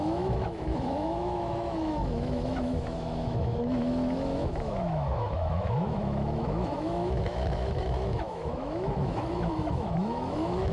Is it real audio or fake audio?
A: fake